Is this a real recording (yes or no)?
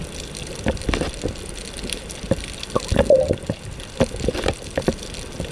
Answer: yes